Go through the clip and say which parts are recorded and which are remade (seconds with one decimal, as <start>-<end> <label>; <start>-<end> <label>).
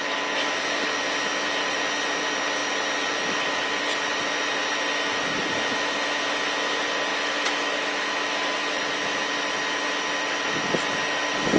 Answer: 0.0-7.1 recorded; 7.1-8.0 remade; 8.0-11.6 recorded